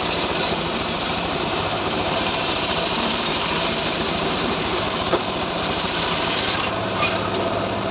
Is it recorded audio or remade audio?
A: remade